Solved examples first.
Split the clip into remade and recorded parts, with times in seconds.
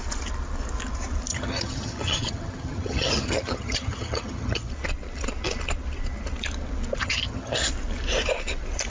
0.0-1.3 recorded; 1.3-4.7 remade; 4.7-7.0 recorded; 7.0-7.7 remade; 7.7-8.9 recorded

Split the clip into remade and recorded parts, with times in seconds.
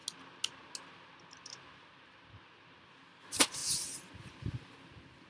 0.0-5.3 recorded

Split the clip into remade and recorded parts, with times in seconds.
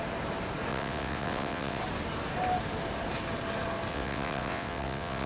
0.0-0.7 recorded; 0.7-1.8 remade; 1.8-3.9 recorded; 3.9-5.3 remade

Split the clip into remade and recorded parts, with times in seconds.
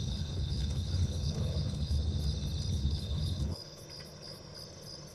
0.0-2.0 remade; 2.0-2.7 recorded; 2.7-3.8 remade; 3.8-5.1 recorded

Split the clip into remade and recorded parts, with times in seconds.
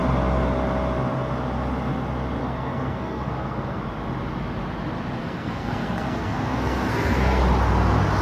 0.0-2.4 recorded; 2.4-3.8 remade; 3.8-5.2 recorded; 5.2-7.4 remade; 7.4-8.2 recorded